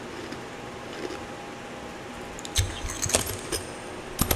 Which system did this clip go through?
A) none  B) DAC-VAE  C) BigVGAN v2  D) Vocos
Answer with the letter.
A